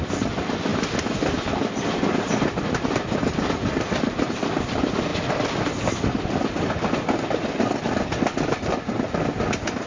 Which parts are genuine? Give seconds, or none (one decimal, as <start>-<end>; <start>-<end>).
0.0-9.9